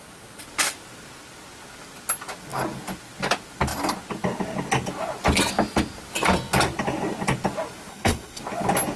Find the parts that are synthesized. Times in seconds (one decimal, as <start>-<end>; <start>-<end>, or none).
7.9-8.4